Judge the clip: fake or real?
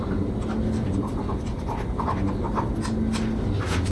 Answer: real